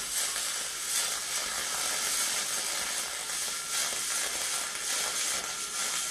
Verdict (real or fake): real